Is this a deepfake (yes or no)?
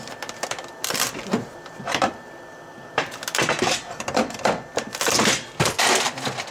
yes